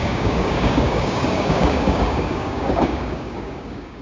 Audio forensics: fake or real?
fake